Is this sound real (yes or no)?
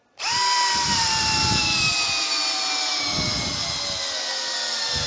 yes